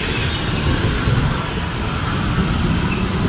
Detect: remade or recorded recorded